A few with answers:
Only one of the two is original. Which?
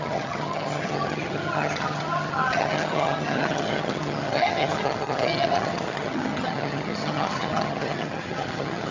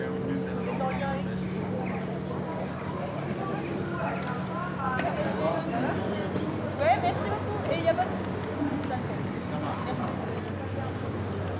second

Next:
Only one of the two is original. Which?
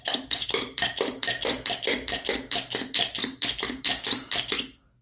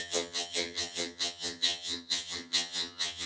first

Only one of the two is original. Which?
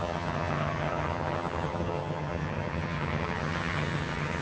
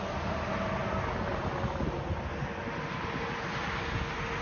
second